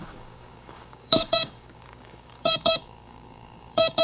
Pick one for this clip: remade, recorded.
remade